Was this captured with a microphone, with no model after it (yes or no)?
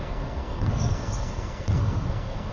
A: no